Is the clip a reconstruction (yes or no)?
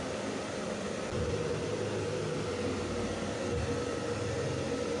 no